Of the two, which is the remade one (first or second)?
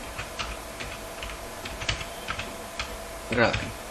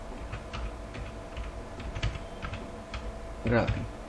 first